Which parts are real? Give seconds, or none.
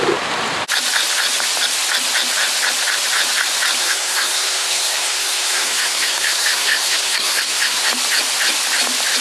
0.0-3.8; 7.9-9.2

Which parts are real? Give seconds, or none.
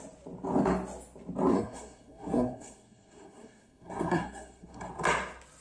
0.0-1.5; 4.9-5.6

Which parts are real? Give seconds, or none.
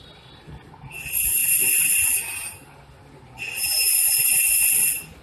0.0-5.2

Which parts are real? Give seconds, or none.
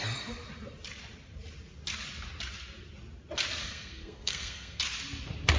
0.0-3.6; 4.8-5.6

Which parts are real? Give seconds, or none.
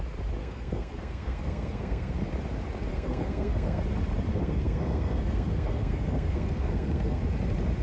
0.0-0.4; 2.2-2.9; 3.8-4.3; 7.2-7.8